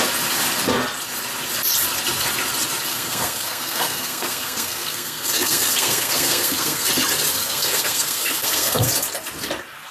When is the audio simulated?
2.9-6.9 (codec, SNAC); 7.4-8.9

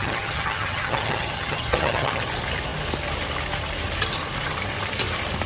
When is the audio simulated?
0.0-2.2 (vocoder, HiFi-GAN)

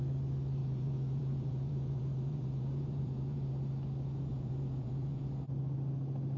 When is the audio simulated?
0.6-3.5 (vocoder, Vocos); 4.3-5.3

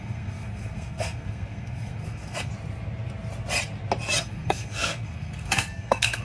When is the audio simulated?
0.0-2.5 (codec, SNAC); 4.2-6.2

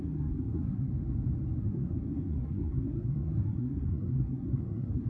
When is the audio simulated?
0.0-0.9 (codec, SNAC); 1.6-5.1

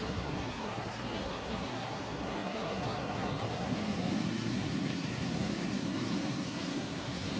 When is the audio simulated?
0.0-7.4 (codec, SNAC)

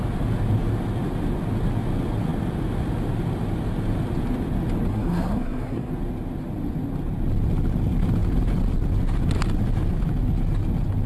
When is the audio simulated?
4.9-5.9 (codec, SNAC)